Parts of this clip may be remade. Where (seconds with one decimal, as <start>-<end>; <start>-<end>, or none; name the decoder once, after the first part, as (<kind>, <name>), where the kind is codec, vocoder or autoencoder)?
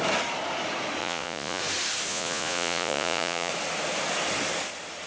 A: 1.0-1.6 (vocoder, Vocos); 2.1-3.5